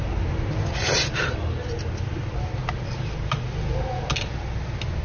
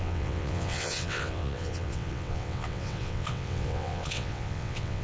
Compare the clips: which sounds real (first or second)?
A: first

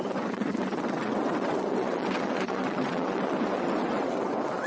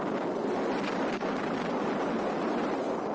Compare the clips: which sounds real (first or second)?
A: second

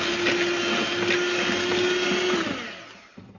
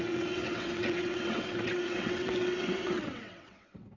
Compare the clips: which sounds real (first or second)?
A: first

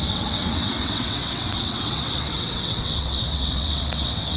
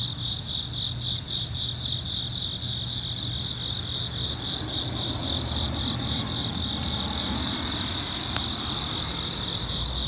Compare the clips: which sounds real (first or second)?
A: second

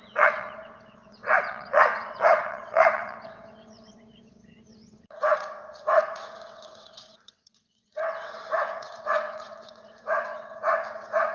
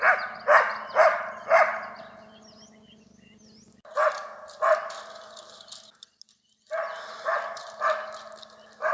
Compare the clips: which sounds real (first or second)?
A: second